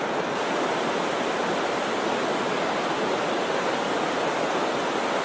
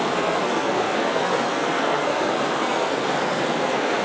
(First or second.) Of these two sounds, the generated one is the second